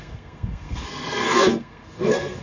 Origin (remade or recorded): remade